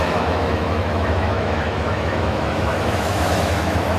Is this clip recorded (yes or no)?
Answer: no